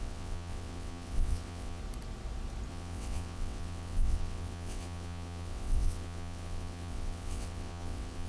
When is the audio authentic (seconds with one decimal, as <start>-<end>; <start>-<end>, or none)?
1.8-2.7